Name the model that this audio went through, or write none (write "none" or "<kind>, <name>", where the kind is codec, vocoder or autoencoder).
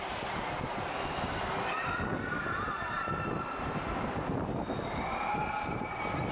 none